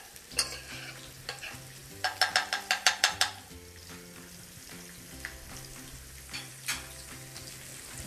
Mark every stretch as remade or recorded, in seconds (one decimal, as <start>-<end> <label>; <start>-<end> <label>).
0.0-8.1 recorded